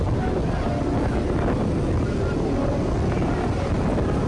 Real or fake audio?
real